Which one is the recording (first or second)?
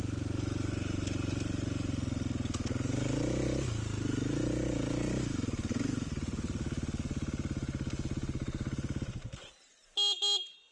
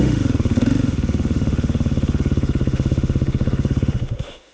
first